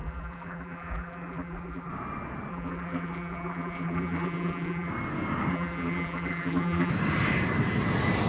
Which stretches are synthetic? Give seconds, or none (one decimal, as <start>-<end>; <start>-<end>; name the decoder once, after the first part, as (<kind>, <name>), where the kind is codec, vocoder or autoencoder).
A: 0.0-1.9 (vocoder, BigVGAN v2); 2.5-4.9; 5.5-6.9